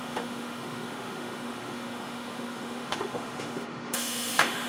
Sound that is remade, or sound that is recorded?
remade